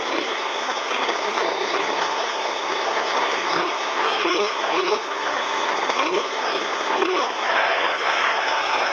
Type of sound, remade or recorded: remade